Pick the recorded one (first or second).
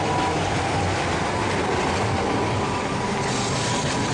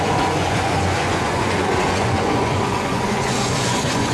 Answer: first